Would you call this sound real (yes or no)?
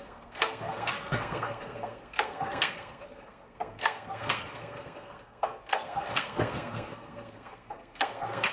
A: no